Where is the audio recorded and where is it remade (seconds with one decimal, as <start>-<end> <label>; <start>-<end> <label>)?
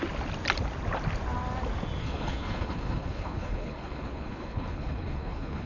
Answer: 0.0-2.0 recorded; 2.0-5.7 remade